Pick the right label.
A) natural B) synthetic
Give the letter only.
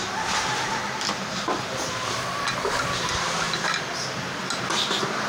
A